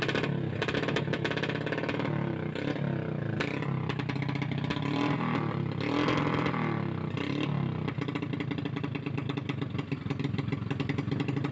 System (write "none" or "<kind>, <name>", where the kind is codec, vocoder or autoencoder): none